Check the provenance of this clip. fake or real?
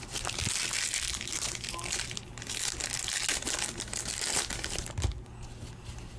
real